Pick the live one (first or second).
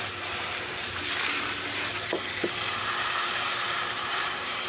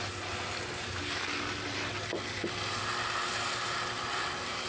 second